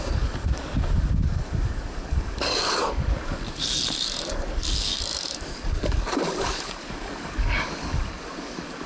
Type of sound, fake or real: fake